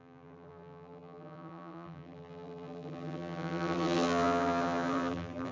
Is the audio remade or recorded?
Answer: remade